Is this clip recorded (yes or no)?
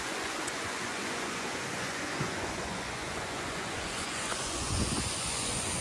no